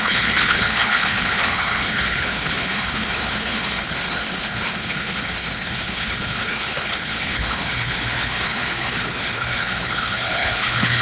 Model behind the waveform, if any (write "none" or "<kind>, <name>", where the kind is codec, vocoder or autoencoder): codec, HILCodec